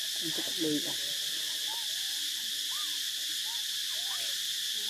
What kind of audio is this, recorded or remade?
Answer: recorded